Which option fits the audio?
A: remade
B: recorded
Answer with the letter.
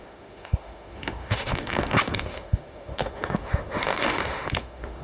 A